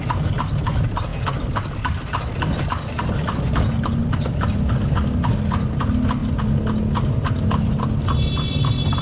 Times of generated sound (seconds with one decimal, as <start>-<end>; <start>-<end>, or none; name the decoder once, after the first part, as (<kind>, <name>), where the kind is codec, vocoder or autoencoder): none